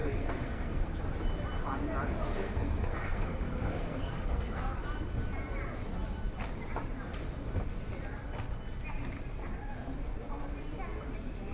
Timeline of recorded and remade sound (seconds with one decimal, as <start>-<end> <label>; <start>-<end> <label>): 0.0-1.0 remade; 1.0-2.3 recorded; 2.3-4.6 remade; 4.6-11.5 recorded